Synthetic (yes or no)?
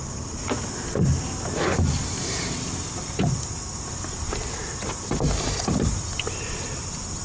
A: no